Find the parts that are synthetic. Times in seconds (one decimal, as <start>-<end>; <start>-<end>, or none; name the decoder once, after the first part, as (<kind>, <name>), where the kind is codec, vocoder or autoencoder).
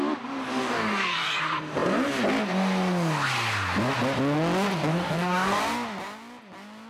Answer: 0.6-1.4 (codec, DAC); 4.9-5.6